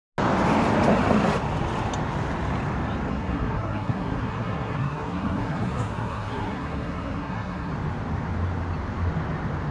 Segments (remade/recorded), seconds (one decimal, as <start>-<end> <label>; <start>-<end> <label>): 0.0-3.1 recorded; 3.1-7.7 remade; 7.7-9.7 recorded